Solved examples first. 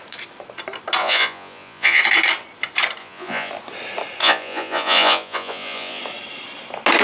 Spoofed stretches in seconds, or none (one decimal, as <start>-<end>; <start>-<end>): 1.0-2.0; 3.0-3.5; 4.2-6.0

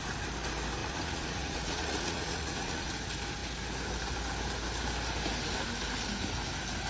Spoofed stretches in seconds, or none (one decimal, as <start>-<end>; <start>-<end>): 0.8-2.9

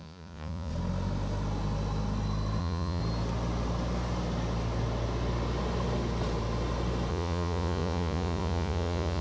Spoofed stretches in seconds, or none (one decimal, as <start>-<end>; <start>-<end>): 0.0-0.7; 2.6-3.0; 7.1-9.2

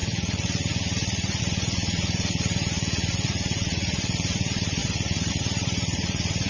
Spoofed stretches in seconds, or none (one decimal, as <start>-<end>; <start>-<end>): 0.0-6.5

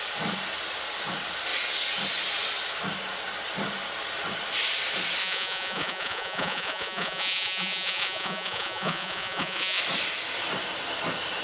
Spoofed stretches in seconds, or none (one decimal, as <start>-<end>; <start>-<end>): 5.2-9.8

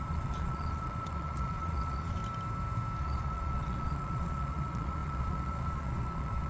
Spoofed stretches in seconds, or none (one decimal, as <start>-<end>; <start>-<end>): 0.0-2.2; 3.0-6.5